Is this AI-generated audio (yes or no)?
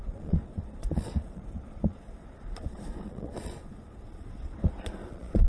yes